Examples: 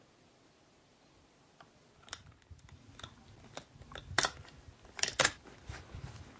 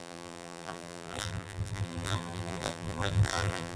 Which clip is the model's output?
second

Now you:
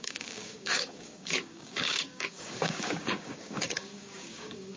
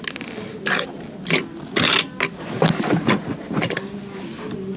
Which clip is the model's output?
first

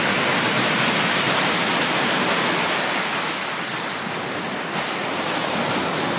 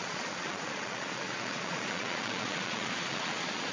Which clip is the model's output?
second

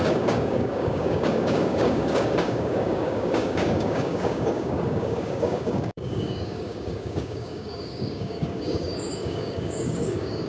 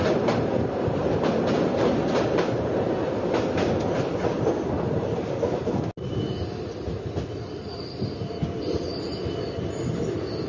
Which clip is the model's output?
first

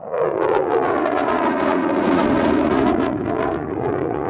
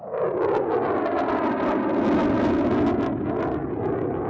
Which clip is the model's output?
first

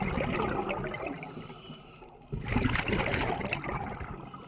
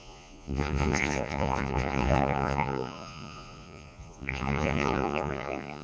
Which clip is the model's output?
second